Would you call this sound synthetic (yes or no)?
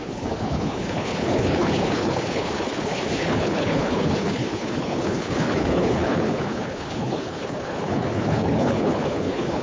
yes